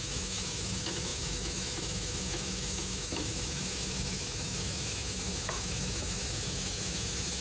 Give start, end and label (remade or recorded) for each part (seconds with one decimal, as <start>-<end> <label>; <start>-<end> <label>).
0.0-7.4 remade